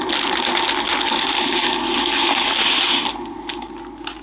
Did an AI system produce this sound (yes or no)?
no